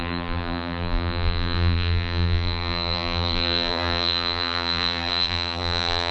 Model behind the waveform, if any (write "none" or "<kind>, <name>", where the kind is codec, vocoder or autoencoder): vocoder, BigVGAN v2